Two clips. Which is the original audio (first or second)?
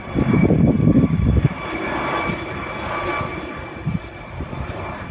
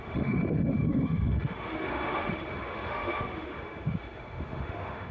first